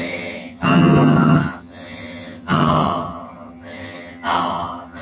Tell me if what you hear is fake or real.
fake